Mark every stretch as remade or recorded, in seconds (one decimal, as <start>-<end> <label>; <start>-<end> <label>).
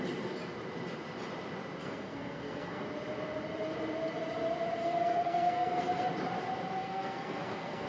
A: 0.0-1.8 recorded; 1.8-2.8 remade; 2.8-4.8 recorded; 4.8-6.1 remade; 6.1-6.8 recorded; 6.8-7.9 remade